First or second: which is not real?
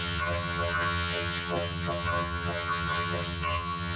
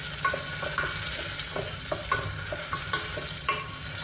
first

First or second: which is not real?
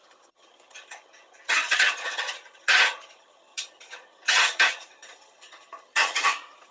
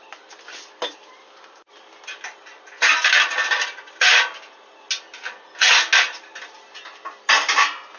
first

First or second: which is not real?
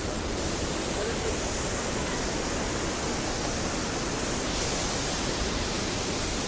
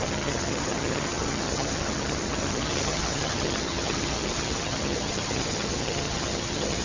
second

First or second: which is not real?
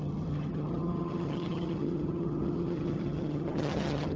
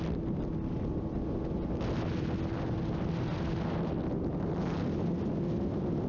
first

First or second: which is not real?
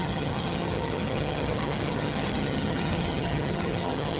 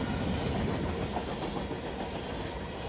first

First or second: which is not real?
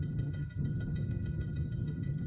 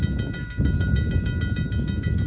first